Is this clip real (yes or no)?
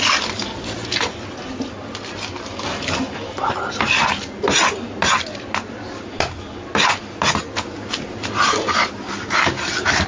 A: yes